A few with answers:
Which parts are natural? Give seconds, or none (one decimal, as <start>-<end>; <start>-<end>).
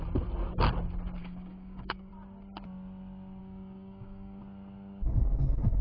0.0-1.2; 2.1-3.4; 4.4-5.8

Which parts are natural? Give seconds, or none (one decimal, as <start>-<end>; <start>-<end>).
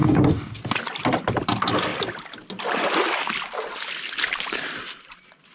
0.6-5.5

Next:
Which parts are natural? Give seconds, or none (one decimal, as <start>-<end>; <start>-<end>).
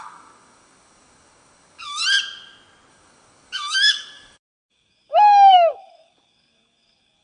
2.0-2.9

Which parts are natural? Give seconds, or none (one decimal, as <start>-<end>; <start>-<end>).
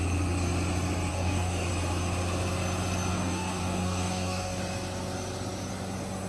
0.0-1.1; 1.7-3.1; 4.6-6.3